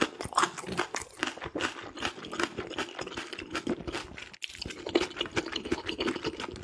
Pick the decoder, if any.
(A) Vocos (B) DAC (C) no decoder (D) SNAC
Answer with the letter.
C